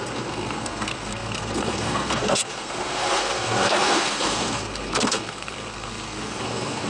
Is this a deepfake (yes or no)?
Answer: yes